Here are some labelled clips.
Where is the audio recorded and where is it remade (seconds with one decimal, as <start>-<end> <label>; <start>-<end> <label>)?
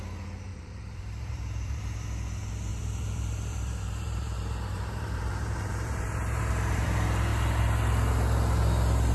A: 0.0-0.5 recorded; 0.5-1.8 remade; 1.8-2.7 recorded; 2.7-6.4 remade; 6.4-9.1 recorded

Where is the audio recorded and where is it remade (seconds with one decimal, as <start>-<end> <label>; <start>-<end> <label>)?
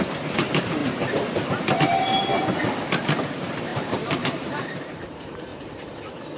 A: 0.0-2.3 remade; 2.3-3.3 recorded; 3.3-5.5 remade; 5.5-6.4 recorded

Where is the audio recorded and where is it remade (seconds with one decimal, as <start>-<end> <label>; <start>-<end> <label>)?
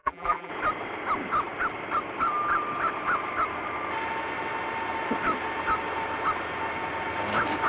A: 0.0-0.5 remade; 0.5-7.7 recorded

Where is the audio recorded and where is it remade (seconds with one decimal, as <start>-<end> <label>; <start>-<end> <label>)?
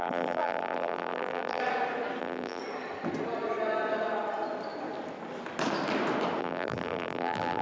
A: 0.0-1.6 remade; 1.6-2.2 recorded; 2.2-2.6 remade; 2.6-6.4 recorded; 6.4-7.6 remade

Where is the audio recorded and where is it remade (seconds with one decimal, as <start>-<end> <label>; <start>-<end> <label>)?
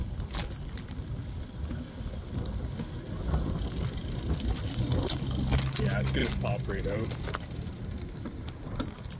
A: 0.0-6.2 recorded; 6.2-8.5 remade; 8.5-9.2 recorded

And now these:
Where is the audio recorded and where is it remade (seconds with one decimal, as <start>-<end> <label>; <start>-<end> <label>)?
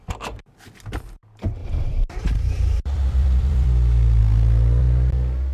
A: 0.0-1.6 recorded; 1.6-4.2 remade; 4.2-5.5 recorded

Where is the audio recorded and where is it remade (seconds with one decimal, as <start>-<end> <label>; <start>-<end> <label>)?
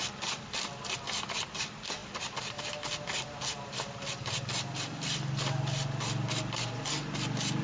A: 0.0-2.0 recorded; 2.0-6.6 remade; 6.6-7.6 recorded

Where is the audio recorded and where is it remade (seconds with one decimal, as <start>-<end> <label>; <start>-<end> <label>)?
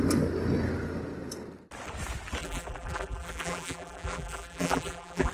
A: 0.0-2.4 recorded; 2.4-5.3 remade